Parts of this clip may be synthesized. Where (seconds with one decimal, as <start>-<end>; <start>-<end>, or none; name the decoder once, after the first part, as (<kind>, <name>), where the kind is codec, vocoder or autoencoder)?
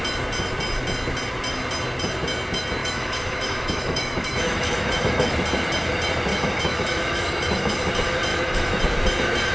2.8-5.3 (autoencoder, DAC-VAE); 6.3-7.9; 8.3-8.8